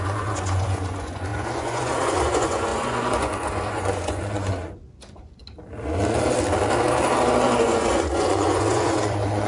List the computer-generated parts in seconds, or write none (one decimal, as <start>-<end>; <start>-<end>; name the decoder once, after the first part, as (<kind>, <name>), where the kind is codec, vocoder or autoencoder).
0.0-5.4 (vocoder, Vocos); 7.6-9.5